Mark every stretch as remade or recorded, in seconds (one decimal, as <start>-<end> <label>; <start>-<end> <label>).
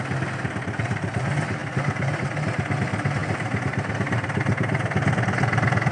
0.0-5.9 recorded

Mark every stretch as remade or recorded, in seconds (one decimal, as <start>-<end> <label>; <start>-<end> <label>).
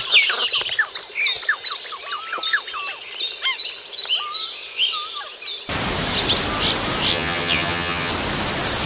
0.0-7.1 recorded; 7.1-8.1 remade; 8.1-8.9 recorded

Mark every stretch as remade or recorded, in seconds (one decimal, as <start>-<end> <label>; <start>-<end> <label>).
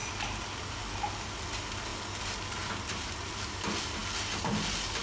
0.0-5.0 recorded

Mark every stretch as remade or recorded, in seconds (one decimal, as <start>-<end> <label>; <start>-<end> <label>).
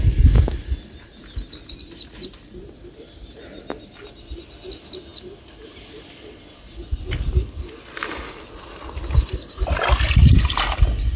0.0-11.2 recorded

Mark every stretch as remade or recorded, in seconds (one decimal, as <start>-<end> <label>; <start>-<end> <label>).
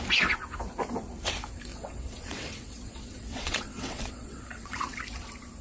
0.0-1.7 recorded; 1.7-5.0 remade; 5.0-5.6 recorded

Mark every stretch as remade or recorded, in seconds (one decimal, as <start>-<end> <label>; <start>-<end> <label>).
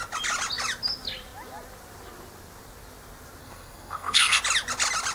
0.0-3.4 recorded; 3.4-4.4 remade; 4.4-5.1 recorded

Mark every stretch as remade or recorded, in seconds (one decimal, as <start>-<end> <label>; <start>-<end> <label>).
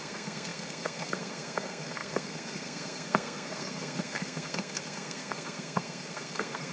0.0-6.7 remade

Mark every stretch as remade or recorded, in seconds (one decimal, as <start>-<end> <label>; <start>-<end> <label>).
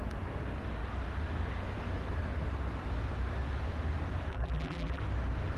0.0-4.3 recorded; 4.3-5.0 remade; 5.0-5.6 recorded